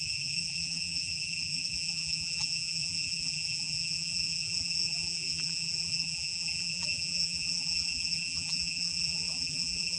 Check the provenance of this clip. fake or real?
fake